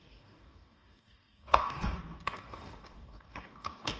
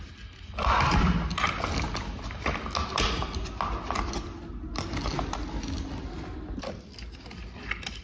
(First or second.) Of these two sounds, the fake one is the first